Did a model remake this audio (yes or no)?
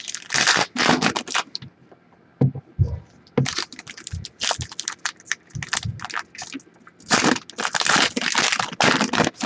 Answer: no